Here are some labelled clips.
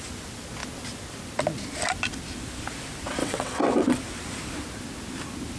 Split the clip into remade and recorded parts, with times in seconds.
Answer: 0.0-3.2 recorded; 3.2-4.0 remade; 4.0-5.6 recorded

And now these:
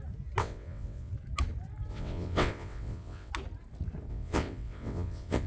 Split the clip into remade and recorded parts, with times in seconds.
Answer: 0.0-0.4 recorded; 0.4-1.1 remade; 1.1-1.9 recorded; 1.9-3.3 remade; 3.3-4.1 recorded; 4.1-5.5 remade